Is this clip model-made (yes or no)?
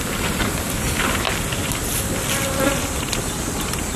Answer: no